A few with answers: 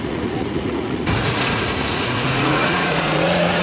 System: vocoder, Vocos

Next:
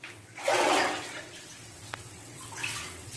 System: vocoder, WaveNeXt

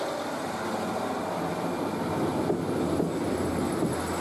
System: none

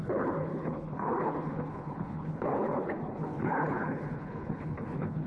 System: codec, HILCodec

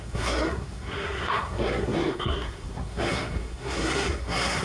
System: codec, SNAC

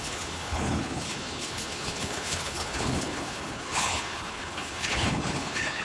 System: codec, HILCodec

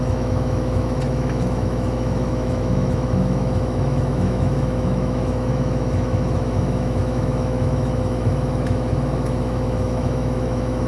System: autoencoder, DAC-VAE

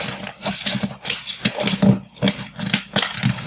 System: none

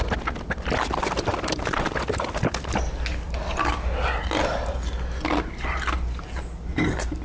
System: none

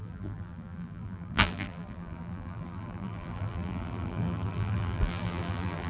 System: vocoder, BigVGAN v2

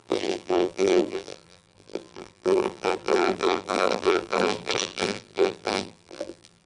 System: vocoder, BigVGAN v2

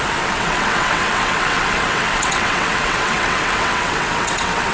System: vocoder, WaveNeXt